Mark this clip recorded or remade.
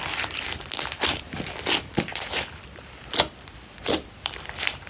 remade